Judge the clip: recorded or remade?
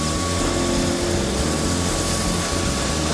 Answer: recorded